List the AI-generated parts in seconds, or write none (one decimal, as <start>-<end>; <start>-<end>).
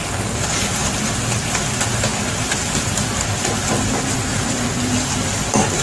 none